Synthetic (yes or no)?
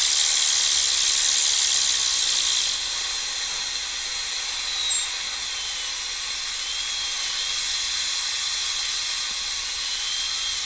no